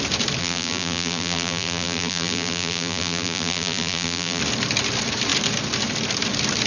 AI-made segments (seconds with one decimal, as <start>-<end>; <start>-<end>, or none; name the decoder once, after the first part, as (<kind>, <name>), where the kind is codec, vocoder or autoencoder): 0.4-4.4 (vocoder, BigVGAN v2)